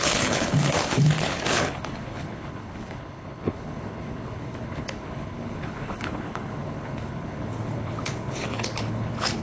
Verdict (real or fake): fake